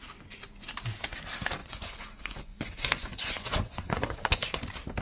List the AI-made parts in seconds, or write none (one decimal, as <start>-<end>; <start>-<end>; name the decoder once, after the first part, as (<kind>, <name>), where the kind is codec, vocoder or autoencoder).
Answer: 1.6-4.6 (vocoder, Vocos)